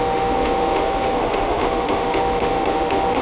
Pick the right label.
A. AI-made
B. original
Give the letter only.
A